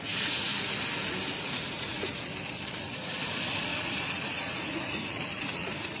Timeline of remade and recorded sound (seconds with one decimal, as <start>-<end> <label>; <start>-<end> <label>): 0.0-0.5 remade; 0.5-1.4 recorded; 1.4-2.3 remade; 2.3-2.8 recorded; 2.8-6.0 remade